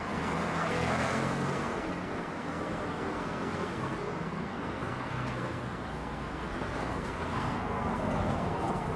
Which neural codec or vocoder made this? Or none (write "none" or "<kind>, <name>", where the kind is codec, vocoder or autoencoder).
codec, SNAC